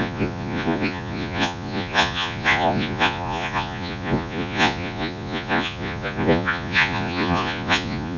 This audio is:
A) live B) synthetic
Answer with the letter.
B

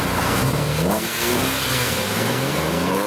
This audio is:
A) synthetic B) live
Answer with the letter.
A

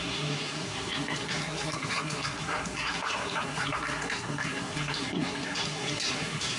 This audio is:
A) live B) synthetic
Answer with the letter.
B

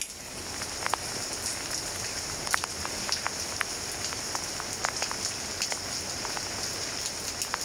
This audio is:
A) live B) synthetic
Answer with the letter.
A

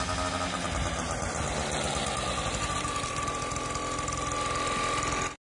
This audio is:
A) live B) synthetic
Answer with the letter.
A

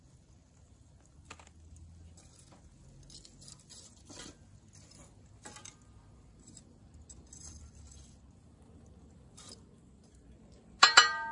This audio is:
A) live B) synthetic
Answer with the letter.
A